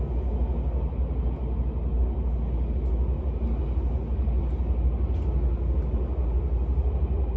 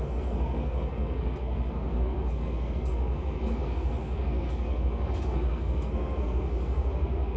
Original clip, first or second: first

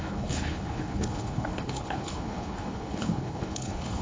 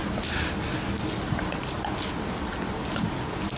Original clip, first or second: second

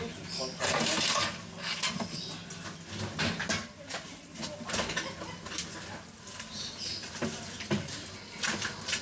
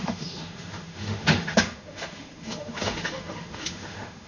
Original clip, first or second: first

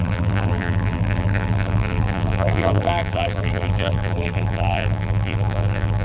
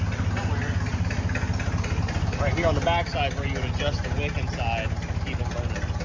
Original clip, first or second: second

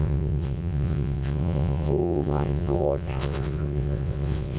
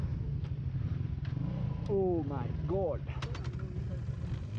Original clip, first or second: second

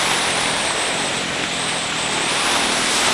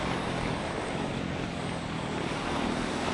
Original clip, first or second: first